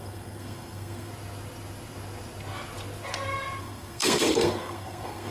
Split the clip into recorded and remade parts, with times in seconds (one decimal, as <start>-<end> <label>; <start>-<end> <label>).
0.0-1.1 remade; 1.1-3.6 recorded; 3.6-5.3 remade